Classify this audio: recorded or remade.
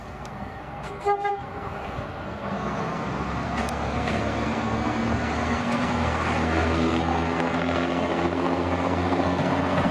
remade